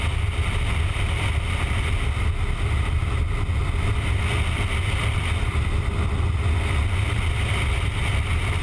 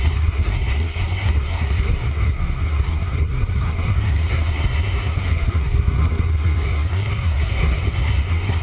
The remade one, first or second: second